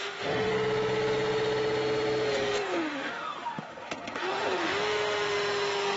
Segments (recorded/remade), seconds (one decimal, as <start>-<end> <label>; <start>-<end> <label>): 0.0-0.5 remade; 0.5-2.7 recorded; 2.7-6.0 remade